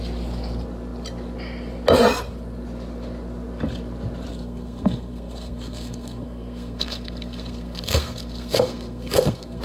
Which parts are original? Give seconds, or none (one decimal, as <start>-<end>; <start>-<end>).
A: 0.0-4.3